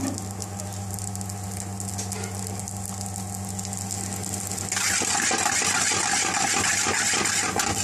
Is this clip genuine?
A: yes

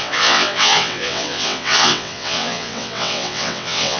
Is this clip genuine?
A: no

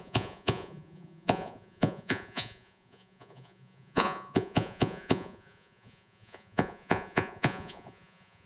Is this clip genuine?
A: no